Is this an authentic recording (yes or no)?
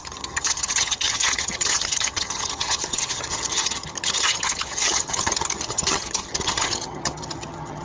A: no